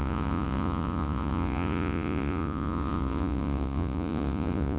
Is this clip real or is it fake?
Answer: fake